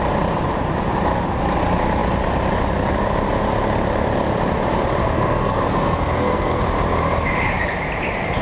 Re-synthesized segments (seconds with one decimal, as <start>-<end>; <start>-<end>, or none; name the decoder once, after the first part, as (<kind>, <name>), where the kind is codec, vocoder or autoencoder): 5.0-6.6 (codec, SNAC)